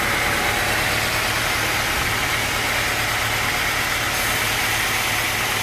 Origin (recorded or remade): recorded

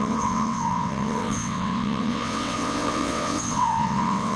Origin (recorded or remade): remade